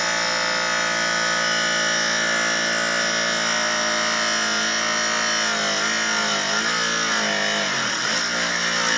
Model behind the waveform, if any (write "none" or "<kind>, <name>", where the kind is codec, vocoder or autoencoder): none